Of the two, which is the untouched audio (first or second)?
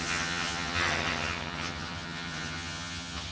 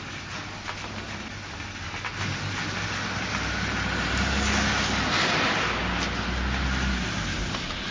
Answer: second